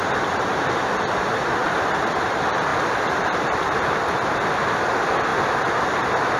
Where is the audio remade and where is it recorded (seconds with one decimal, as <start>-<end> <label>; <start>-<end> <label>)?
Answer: 0.0-1.6 recorded; 1.6-2.2 remade; 2.2-2.7 recorded; 2.7-4.1 remade; 4.1-6.4 recorded